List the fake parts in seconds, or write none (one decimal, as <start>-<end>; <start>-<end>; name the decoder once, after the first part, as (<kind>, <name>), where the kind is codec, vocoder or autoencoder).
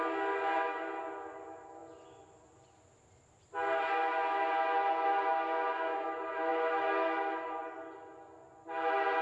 none